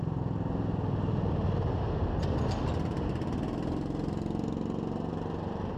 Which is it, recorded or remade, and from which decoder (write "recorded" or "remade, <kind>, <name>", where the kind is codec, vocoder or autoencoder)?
recorded